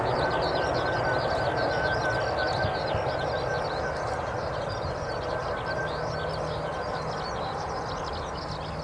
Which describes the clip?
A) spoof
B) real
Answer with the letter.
B